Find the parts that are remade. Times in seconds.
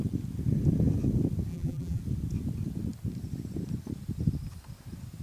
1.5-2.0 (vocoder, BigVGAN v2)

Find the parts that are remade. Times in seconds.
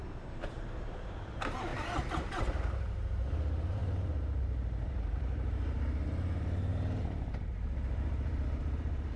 0.0-1.7 (vocoder, BigVGAN v2); 2.4-9.2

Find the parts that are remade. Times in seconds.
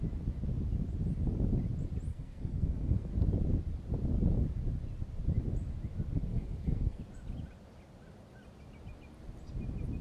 2.1-3.1 (codec, SNAC); 6.3-7.0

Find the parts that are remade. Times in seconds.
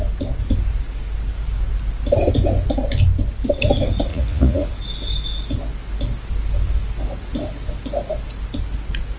4.1-4.7 (vocoder, Vocos)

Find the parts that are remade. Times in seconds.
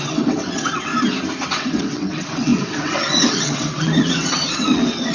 0.0-0.9 (vocoder, WaveNeXt); 1.5-5.1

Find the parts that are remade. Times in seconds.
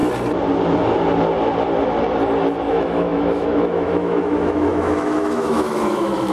2.7-6.3 (autoencoder, DAC-VAE)